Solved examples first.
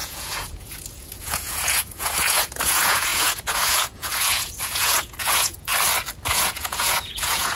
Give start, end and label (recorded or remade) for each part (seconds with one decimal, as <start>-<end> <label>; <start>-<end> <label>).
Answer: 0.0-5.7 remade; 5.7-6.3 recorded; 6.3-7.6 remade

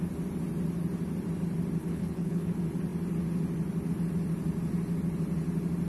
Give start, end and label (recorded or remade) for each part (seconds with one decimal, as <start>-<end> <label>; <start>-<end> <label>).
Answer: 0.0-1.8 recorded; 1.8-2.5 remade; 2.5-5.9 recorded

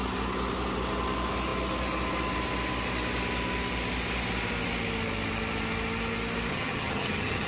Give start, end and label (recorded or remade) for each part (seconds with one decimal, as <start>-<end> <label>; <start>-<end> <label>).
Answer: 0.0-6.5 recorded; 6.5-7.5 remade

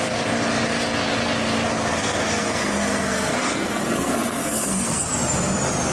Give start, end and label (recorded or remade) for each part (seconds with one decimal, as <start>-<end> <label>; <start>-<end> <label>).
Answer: 0.0-1.9 recorded; 1.9-5.1 remade; 5.1-5.9 recorded

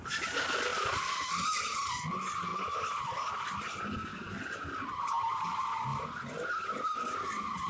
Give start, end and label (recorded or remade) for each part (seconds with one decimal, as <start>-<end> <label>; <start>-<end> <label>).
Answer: 0.0-0.7 recorded; 0.7-2.1 remade; 2.1-5.9 recorded; 5.9-6.5 remade; 6.5-7.7 recorded

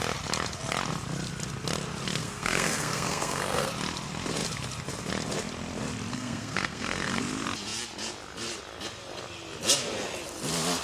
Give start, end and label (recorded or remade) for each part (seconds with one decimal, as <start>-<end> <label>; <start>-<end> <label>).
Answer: 0.0-2.2 recorded; 2.2-3.7 remade; 3.7-6.1 recorded; 6.1-7.2 remade; 7.2-10.8 recorded

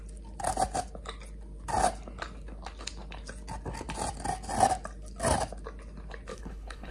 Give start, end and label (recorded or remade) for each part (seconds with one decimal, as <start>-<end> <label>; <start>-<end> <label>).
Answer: 0.0-6.3 recorded; 6.3-6.9 remade

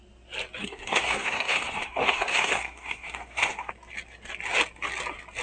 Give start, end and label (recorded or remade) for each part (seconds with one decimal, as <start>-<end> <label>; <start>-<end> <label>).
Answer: 0.0-0.6 recorded; 0.6-3.7 remade; 3.7-5.4 recorded